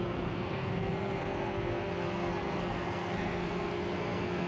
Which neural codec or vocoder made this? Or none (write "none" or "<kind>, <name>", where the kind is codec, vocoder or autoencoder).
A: codec, SNAC